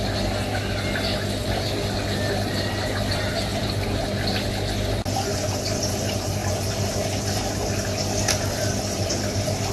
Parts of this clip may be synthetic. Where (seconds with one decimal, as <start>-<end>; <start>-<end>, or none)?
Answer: none